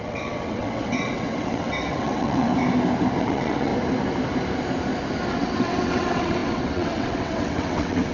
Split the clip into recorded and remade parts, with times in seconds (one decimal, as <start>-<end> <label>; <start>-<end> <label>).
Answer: 0.0-2.5 remade; 2.5-3.2 recorded; 3.2-3.7 remade; 3.7-5.3 recorded; 5.3-8.1 remade